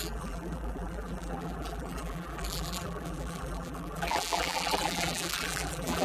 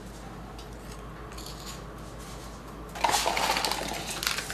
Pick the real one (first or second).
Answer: second